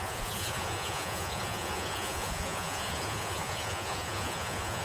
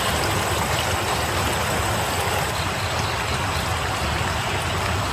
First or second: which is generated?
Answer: first